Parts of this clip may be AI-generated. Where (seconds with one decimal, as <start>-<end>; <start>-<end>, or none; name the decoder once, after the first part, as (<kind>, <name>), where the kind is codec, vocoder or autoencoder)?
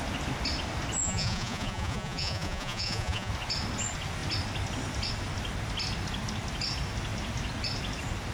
1.0-3.3 (vocoder, Vocos)